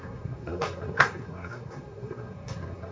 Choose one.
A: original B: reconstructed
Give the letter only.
B